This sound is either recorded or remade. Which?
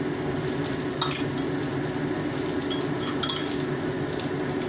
recorded